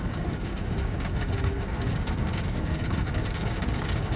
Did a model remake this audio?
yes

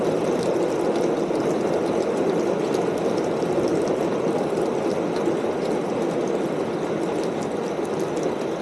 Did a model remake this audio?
no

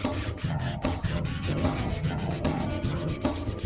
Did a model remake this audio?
yes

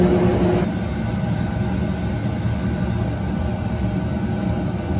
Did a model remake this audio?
no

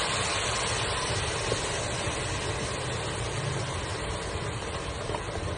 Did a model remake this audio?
yes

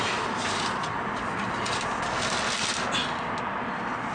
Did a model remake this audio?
no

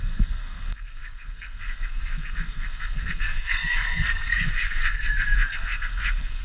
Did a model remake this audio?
yes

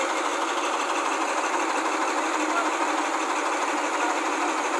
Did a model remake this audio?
no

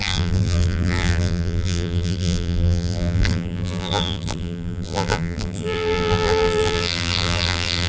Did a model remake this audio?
yes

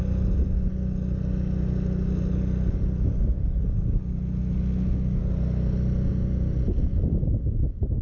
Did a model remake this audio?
no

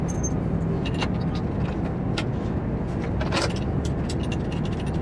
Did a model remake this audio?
no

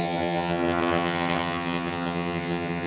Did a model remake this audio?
yes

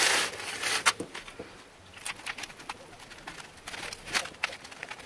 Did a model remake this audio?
no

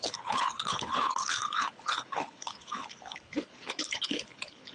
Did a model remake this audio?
yes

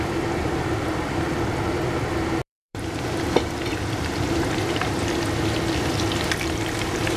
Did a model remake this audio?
yes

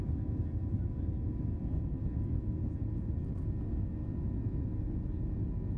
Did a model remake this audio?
no